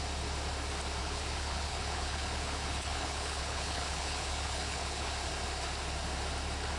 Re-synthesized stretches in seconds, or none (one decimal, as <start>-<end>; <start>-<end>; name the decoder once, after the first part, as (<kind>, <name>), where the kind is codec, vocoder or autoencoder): 1.0-5.1 (codec, HILCodec)

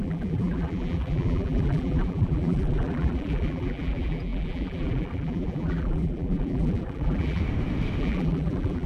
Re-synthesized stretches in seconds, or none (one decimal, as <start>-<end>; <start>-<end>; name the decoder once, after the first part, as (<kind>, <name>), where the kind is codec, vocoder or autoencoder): 0.0-7.4 (vocoder, BigVGAN v2); 8.0-8.9

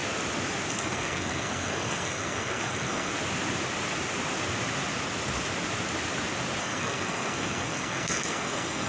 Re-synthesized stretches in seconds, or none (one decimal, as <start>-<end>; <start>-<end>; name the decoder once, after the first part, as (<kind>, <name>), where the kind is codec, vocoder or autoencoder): 0.7-3.1 (codec, SNAC); 6.6-8.9